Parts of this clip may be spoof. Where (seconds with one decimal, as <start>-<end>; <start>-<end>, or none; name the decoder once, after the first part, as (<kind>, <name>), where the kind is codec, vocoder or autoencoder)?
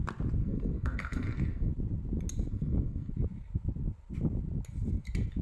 0.4-1.7 (codec, SNAC); 2.5-3.1